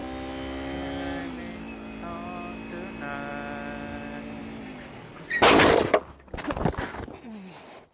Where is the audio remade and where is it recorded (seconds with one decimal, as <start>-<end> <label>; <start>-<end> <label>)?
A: 0.0-7.9 recorded